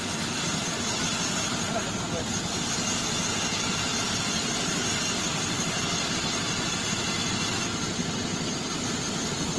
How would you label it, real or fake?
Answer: real